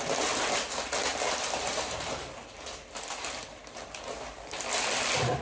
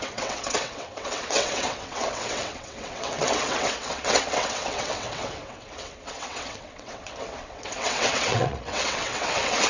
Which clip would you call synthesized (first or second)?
second